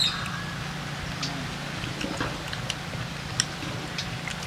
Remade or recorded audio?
recorded